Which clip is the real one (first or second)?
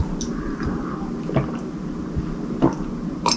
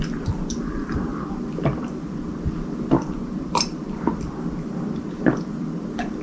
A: first